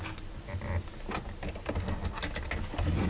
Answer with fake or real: real